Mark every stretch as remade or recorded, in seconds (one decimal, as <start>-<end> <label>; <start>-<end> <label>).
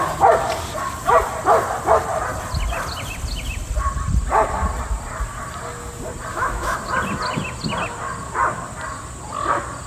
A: 0.0-6.3 recorded; 6.3-6.8 remade; 6.8-9.9 recorded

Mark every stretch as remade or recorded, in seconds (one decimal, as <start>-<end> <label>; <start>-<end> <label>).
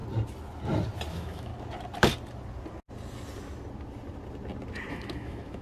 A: 0.0-1.1 recorded; 1.1-1.5 remade; 1.5-4.9 recorded; 4.9-5.6 remade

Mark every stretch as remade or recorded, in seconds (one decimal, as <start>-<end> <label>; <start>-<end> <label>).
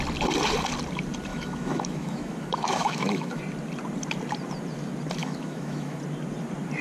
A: 0.0-1.3 recorded; 1.3-3.4 remade; 3.4-5.2 recorded; 5.2-6.0 remade; 6.0-6.8 recorded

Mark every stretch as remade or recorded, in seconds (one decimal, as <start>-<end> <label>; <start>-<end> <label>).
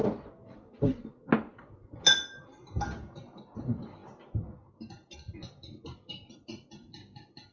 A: 0.0-7.5 recorded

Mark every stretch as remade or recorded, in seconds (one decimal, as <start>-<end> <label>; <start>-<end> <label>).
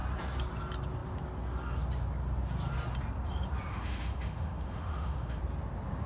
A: 0.0-3.7 recorded; 3.7-5.4 remade; 5.4-6.1 recorded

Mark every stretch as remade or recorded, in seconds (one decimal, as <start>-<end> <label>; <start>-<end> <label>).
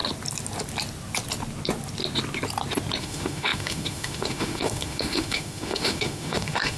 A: 0.0-3.0 recorded; 3.0-6.8 remade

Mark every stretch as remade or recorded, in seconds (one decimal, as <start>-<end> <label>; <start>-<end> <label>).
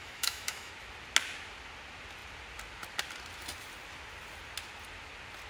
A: 0.0-0.7 remade; 0.7-5.5 recorded